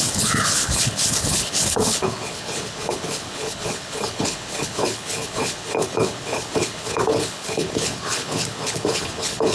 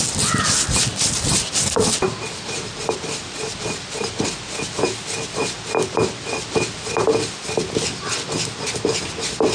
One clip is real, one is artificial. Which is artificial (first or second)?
first